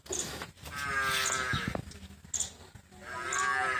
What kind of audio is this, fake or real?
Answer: real